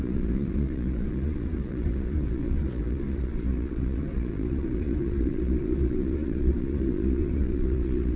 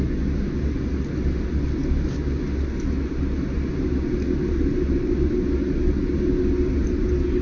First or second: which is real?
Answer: second